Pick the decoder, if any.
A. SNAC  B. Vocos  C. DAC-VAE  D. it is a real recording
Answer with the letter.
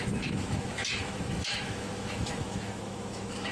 C